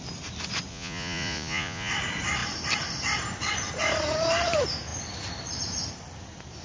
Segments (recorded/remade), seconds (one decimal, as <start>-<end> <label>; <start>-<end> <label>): 0.0-0.7 recorded; 0.7-1.9 remade; 1.9-6.6 recorded